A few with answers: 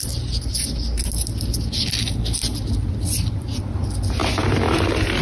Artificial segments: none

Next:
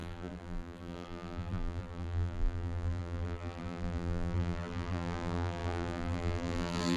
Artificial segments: 0.0-7.0 (vocoder, BigVGAN v2)

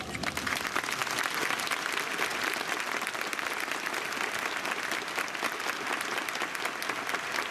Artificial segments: none

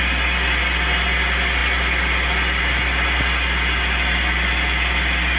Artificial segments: none

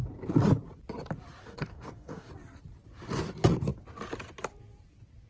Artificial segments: 1.4-2.3 (codec, DAC)

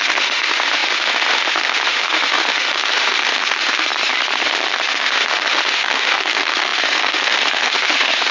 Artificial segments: 0.0-3.9 (autoencoder, DAC-VAE); 4.9-8.3

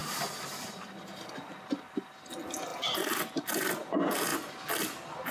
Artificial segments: 0.0-2.7 (vocoder, BigVGAN v2); 3.3-5.3

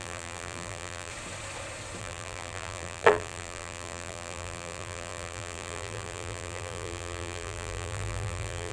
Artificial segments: 0.0-1.1 (vocoder, BigVGAN v2); 2.0-8.7